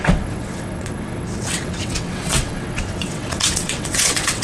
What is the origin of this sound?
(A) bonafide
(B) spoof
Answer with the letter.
B